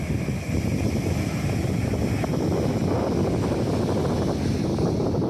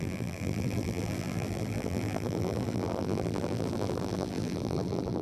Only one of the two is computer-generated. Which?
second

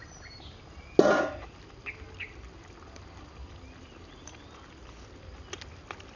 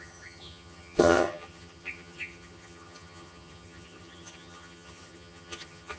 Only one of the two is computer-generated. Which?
second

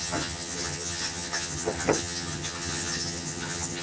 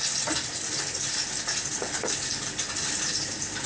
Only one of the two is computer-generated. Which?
first